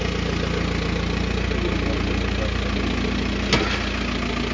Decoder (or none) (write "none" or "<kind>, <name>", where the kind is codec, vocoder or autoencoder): none